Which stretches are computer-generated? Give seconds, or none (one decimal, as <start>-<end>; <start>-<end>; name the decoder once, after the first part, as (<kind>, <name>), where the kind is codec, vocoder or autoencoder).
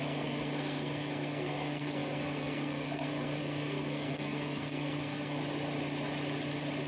0.0-5.4 (codec, SNAC)